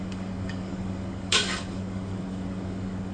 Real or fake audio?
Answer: fake